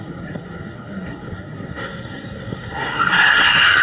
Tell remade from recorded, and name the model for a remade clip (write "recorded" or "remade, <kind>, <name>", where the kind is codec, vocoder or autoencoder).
remade, codec, SNAC